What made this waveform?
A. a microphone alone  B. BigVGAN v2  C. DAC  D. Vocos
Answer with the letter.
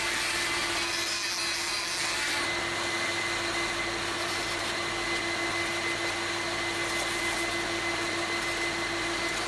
A